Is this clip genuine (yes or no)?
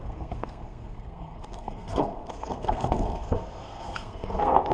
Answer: no